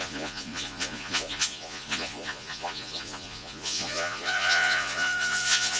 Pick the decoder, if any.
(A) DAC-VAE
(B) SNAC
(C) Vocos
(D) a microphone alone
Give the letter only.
C